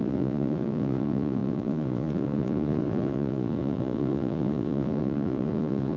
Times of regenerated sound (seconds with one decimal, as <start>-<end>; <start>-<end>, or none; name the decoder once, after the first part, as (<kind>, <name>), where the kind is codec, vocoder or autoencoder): 0.0-6.0 (vocoder, Vocos)